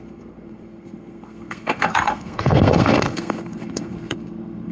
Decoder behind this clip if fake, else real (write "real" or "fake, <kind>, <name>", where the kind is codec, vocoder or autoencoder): fake, codec, SNAC